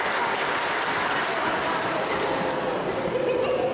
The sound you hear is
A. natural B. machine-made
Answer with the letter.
B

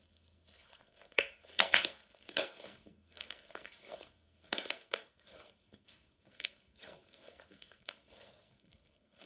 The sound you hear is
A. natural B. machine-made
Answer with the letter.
B